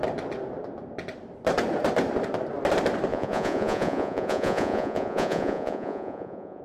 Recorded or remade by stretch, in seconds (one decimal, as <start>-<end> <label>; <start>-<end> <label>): 0.0-3.1 recorded; 3.1-6.6 remade

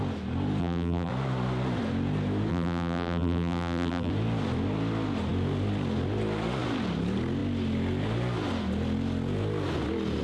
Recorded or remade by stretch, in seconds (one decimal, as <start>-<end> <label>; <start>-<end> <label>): 0.0-0.6 recorded; 0.6-1.1 remade; 1.1-2.5 recorded; 2.5-4.1 remade; 4.1-10.2 recorded

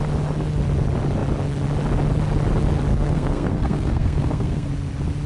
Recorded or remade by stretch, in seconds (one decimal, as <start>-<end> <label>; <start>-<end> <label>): 0.0-2.9 recorded; 2.9-4.7 remade; 4.7-5.3 recorded